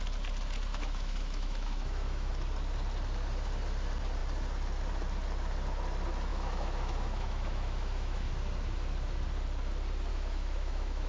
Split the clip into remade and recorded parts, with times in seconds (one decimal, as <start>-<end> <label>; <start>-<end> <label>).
0.0-0.7 recorded; 0.7-2.3 remade; 2.3-6.3 recorded; 6.3-8.3 remade; 8.3-10.1 recorded; 10.1-11.1 remade